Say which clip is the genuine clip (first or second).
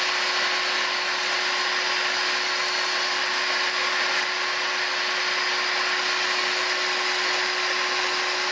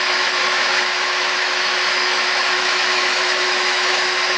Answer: first